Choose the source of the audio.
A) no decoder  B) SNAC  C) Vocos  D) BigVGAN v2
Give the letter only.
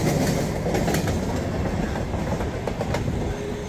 A